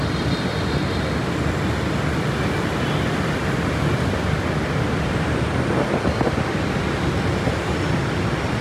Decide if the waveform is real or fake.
real